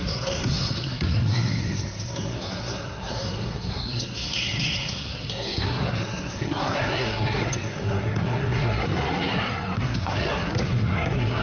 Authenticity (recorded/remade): remade